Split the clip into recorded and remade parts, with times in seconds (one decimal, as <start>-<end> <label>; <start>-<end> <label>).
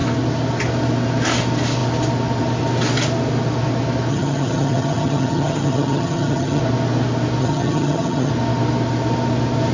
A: 0.0-4.1 recorded; 4.1-6.6 remade; 6.6-7.4 recorded; 7.4-8.3 remade; 8.3-9.7 recorded